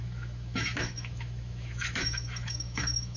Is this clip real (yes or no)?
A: no